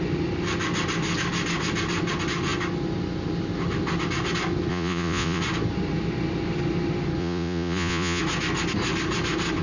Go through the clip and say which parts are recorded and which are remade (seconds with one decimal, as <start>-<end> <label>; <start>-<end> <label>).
0.0-4.7 recorded; 4.7-5.4 remade; 5.4-7.2 recorded; 7.2-8.2 remade; 8.2-9.6 recorded